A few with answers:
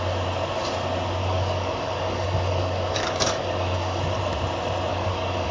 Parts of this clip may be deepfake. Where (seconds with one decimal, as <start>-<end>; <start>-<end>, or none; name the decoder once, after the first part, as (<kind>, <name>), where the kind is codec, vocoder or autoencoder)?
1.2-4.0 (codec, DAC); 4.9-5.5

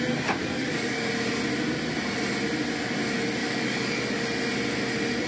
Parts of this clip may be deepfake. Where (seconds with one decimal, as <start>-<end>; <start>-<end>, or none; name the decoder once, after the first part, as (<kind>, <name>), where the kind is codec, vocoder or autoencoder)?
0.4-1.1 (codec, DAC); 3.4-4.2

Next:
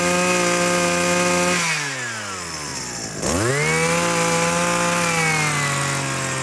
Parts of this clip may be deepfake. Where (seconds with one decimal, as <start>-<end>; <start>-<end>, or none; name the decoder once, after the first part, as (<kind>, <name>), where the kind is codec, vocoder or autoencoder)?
none